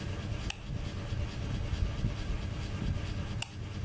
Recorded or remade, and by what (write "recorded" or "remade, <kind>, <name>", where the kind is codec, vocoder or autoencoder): recorded